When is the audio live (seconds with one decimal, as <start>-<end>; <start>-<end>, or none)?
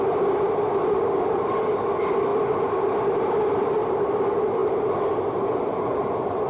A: 4.6-5.3